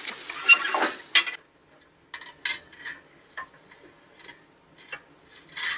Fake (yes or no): no